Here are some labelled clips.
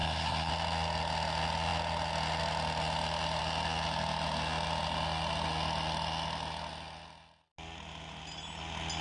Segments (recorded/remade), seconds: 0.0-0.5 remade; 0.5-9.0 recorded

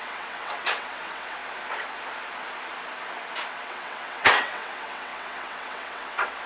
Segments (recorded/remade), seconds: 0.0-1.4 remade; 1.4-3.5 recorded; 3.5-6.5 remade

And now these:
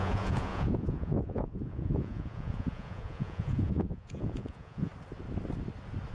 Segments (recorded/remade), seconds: 0.0-4.9 remade; 4.9-6.1 recorded

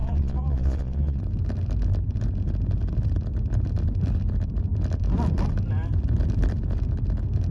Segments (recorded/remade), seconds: 0.0-1.2 remade; 1.2-7.5 recorded

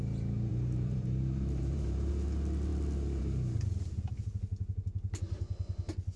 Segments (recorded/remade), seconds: 0.0-0.5 recorded; 0.5-2.1 remade; 2.1-6.2 recorded

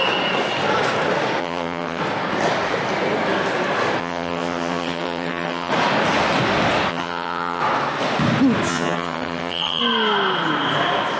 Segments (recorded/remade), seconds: 0.0-1.4 recorded; 1.4-2.0 remade; 2.0-4.0 recorded; 4.0-5.7 remade; 5.7-6.9 recorded; 6.9-7.6 remade; 7.6-8.7 recorded; 8.7-9.8 remade; 9.8-11.2 recorded